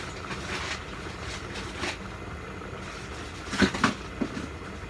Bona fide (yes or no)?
yes